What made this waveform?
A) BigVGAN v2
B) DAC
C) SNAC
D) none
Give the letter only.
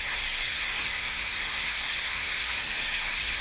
C